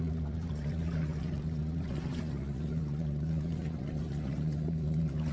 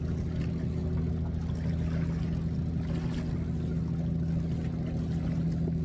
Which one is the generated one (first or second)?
first